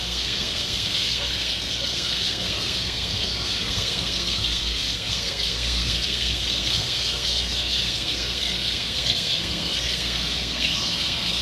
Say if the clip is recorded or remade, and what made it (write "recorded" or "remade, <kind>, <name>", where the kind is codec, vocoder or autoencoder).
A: remade, codec, SNAC